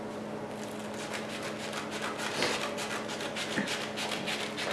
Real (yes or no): yes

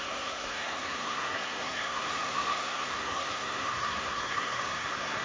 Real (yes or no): no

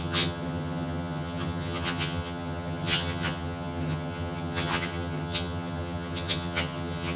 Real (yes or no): no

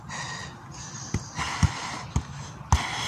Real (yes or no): yes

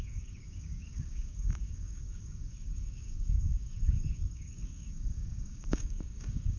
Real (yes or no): no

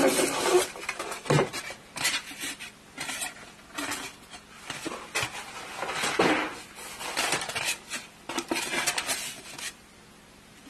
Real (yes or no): yes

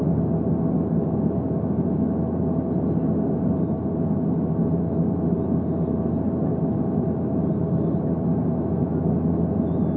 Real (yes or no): yes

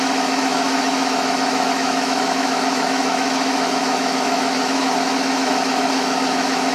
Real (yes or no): no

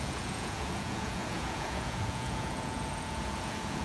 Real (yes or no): no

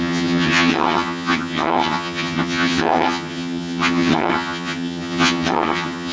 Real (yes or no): no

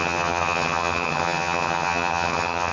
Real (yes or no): no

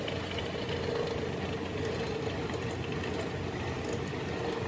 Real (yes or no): yes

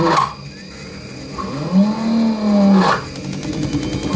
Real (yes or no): yes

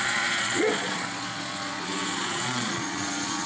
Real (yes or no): no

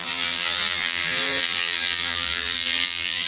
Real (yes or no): no